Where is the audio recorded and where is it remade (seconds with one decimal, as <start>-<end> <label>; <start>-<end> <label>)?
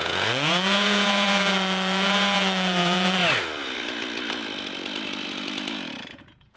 0.0-3.2 remade; 3.2-6.1 recorded; 6.1-6.6 remade